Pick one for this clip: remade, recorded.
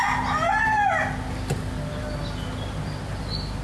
recorded